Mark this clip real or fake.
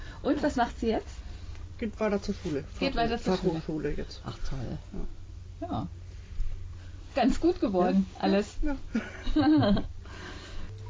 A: real